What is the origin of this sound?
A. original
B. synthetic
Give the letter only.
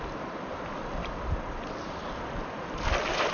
A